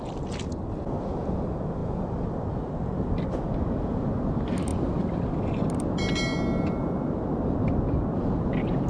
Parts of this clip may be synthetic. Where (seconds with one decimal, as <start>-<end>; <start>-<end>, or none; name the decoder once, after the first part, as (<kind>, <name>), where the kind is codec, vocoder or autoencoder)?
1.8-2.5 (vocoder, BigVGAN v2); 4.7-5.5